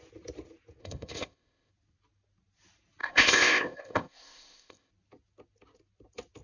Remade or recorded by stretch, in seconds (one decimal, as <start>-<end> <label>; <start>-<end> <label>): 0.0-0.8 recorded; 0.8-1.7 remade; 1.7-3.0 recorded; 3.0-4.9 remade; 4.9-6.4 recorded